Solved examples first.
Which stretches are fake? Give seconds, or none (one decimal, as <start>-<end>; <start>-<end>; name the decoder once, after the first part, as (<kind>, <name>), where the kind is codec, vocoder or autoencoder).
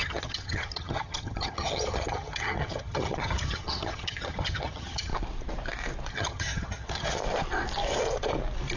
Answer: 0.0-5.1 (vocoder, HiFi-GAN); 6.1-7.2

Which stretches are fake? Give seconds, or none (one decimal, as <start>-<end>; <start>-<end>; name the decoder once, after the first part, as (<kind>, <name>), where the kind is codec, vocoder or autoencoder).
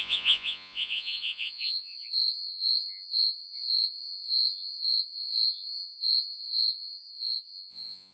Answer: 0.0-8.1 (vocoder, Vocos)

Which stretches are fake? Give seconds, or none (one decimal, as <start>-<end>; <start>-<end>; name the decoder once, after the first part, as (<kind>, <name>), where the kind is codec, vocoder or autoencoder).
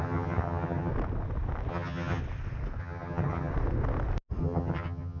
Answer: 0.0-0.9 (vocoder, HiFi-GAN); 1.7-2.2; 2.8-3.5; 4.4-5.2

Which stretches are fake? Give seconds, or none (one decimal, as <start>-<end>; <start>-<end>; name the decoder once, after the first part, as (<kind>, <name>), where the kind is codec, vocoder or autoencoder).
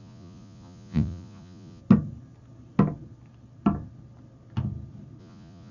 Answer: 0.0-1.8 (vocoder, Vocos); 5.2-5.7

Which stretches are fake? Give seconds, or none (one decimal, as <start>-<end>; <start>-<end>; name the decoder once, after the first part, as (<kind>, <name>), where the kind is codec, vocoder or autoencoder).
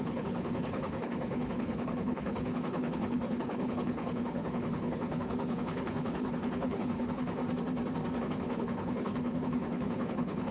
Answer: 0.0-7.4 (codec, HILCodec); 8.2-10.5